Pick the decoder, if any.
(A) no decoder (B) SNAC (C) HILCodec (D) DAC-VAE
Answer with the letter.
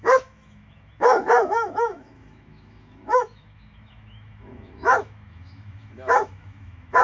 D